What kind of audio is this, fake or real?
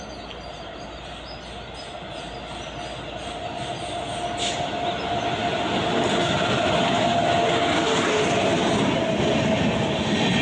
real